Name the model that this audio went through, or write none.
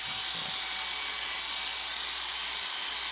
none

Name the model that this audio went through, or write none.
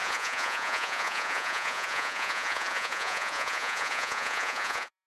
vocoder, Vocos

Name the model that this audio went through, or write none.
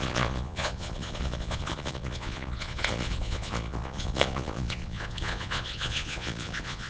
vocoder, Vocos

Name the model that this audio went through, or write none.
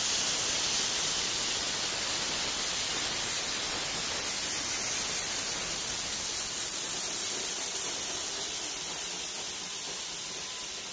none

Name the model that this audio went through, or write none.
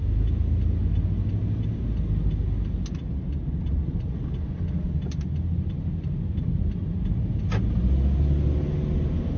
none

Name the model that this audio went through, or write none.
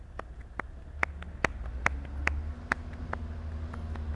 none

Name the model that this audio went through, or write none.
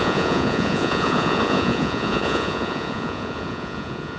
vocoder, Vocos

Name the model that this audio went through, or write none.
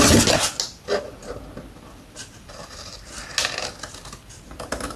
none